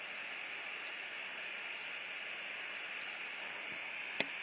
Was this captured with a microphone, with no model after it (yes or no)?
yes